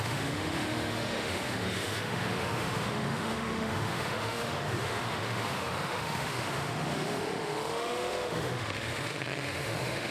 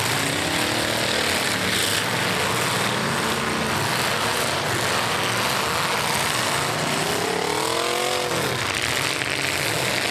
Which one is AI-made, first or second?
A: first